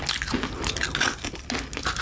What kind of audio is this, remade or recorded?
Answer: recorded